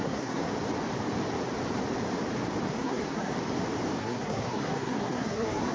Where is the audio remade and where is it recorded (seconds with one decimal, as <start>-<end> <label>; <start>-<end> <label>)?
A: 0.0-0.5 remade; 0.5-2.7 recorded; 2.7-3.3 remade; 3.3-4.0 recorded; 4.0-5.7 remade